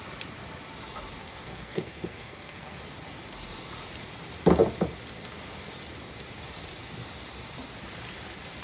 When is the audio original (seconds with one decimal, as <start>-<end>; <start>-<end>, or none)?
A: 0.0-1.2; 2.8-8.6